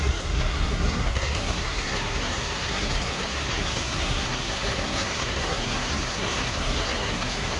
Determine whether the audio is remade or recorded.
remade